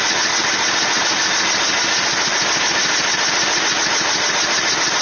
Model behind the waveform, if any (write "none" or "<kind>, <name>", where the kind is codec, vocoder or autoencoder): none